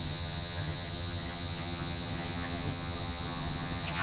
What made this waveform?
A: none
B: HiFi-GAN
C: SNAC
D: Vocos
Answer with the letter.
B